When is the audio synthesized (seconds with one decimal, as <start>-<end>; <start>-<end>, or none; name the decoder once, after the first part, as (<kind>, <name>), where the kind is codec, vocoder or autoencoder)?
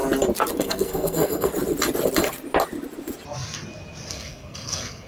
0.6-1.5 (codec, SNAC); 4.1-5.1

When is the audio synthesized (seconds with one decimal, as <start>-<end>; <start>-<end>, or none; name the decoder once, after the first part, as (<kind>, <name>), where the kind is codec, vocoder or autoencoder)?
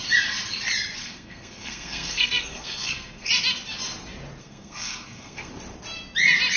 1.0-3.3 (codec, SNAC); 4.4-5.5